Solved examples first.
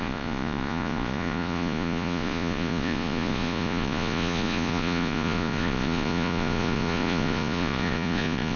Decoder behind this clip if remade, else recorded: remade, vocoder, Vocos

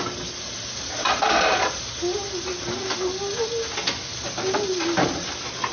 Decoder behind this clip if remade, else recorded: recorded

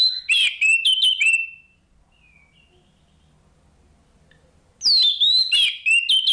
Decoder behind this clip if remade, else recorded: recorded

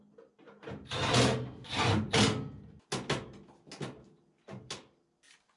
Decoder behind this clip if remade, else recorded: recorded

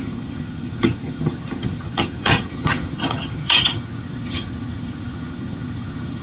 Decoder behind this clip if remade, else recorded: remade, vocoder, HiFi-GAN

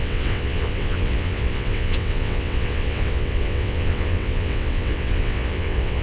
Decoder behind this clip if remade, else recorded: remade, vocoder, WaveNeXt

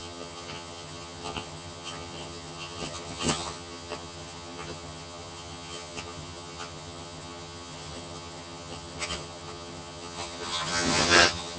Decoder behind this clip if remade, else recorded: remade, vocoder, HiFi-GAN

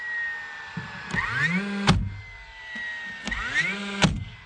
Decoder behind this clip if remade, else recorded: recorded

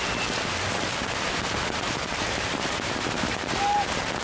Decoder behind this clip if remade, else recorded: recorded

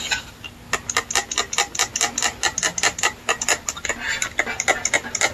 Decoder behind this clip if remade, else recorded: recorded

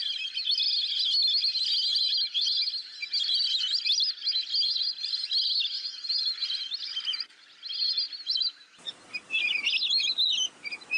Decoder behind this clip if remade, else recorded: recorded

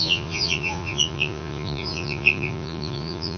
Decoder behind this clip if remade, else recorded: remade, vocoder, Vocos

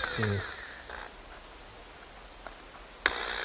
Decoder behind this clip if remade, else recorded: recorded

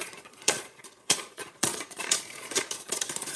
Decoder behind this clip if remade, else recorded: remade, vocoder, Vocos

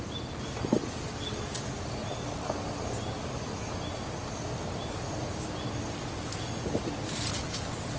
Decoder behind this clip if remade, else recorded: recorded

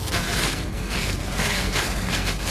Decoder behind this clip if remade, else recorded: remade, codec, SNAC